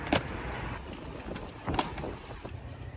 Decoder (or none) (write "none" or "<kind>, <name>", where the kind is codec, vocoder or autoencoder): none